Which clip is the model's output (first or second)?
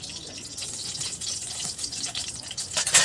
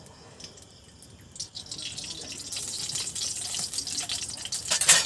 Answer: first